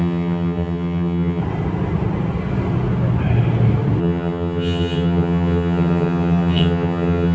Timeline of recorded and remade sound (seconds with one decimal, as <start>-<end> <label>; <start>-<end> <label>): 0.0-1.4 remade; 1.4-4.0 recorded; 4.0-7.3 remade